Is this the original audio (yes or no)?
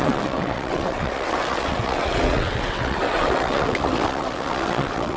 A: no